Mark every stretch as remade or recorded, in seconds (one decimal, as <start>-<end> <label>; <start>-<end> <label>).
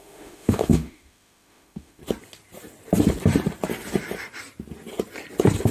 0.0-2.0 remade; 2.0-5.7 recorded